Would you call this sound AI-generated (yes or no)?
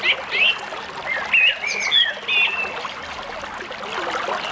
no